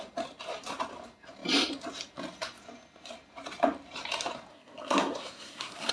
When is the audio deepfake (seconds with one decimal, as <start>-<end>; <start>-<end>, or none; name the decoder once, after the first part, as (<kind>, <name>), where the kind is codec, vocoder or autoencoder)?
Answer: 4.5-5.9 (codec, SNAC)